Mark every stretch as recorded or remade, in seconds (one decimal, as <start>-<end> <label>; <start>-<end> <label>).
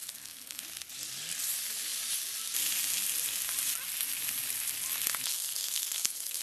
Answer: 0.0-0.6 remade; 0.6-5.3 recorded; 5.3-6.4 remade